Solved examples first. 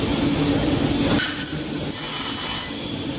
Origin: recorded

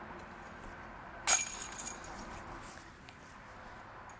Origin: recorded